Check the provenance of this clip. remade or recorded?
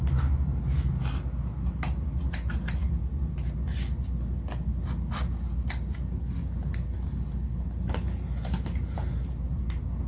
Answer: recorded